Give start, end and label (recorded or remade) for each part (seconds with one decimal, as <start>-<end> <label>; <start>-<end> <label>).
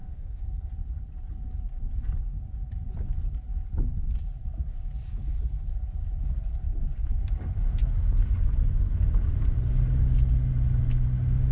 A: 0.0-0.7 remade; 0.7-11.5 recorded